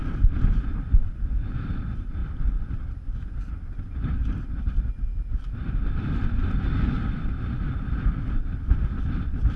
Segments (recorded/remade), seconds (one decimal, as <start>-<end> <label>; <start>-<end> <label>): 0.0-9.6 recorded